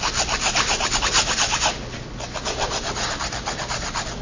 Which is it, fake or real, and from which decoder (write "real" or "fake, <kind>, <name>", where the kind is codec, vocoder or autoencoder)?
real